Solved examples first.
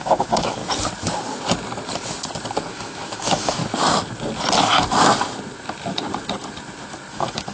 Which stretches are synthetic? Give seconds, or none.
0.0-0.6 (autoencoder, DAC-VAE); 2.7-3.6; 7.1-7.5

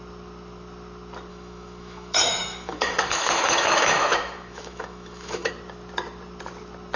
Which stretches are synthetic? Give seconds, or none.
1.3-5.5 (autoencoder, DAC-VAE)

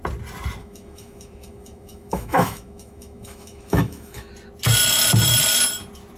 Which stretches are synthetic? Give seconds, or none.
0.6-4.3 (autoencoder, DAC-VAE)

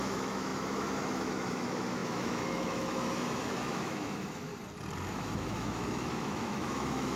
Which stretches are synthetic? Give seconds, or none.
0.0-4.5 (autoencoder, DAC-VAE); 5.1-7.2

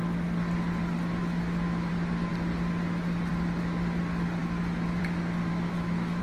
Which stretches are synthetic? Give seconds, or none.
1.2-1.9 (autoencoder, DAC-VAE); 4.4-5.0; 5.5-6.2